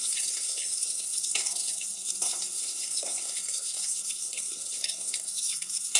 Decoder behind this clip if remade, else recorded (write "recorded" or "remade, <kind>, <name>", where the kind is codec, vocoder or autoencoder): remade, codec, SNAC